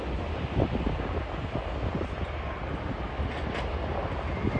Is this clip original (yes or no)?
yes